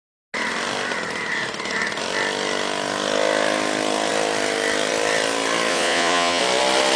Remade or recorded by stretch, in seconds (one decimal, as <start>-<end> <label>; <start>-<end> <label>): 0.0-5.7 recorded; 5.7-6.4 remade; 6.4-7.0 recorded